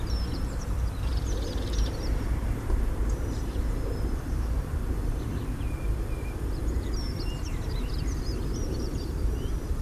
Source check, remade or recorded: remade